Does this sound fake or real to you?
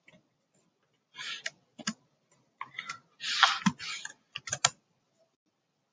real